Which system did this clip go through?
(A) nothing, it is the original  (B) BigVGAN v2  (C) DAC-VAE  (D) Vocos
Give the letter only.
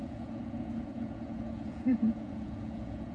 D